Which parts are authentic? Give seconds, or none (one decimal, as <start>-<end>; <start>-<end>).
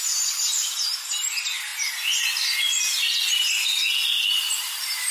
0.0-5.1